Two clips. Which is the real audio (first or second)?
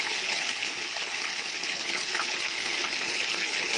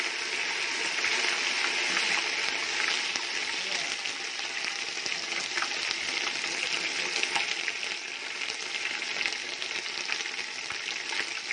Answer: second